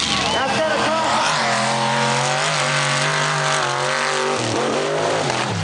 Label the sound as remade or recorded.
recorded